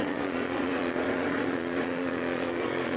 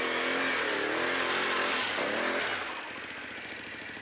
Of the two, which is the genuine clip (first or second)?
second